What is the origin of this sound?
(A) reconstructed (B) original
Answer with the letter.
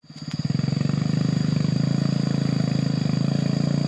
B